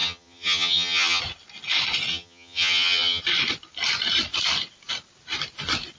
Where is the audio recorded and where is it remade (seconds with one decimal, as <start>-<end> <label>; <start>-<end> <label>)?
0.0-1.2 remade; 1.2-2.1 recorded; 2.1-3.2 remade; 3.2-6.0 recorded